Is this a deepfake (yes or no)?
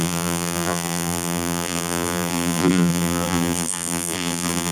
yes